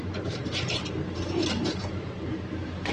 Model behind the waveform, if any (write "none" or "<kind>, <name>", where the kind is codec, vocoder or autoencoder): vocoder, BigVGAN v2